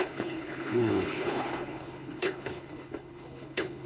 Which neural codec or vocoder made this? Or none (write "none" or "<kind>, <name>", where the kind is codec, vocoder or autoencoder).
codec, HILCodec